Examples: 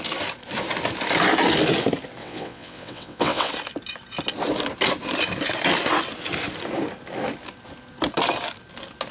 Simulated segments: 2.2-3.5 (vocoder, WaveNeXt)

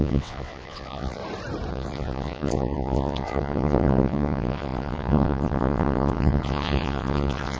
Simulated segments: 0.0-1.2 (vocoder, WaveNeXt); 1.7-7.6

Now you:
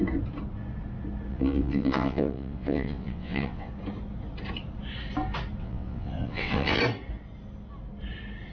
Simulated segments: 1.3-3.7 (vocoder, WaveNeXt); 5.6-6.8

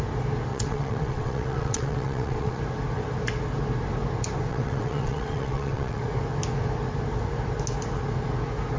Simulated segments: 0.5-2.6 (vocoder, WaveNeXt); 4.5-6.0

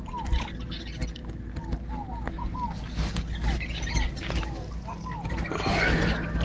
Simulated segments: none

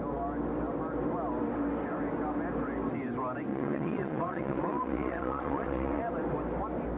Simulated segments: 3.5-6.0 (vocoder, WaveNeXt)

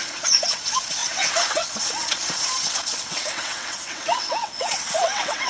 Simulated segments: 0.0-5.5 (vocoder, WaveNeXt)